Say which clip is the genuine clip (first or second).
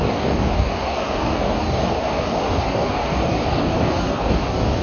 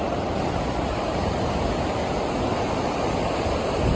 second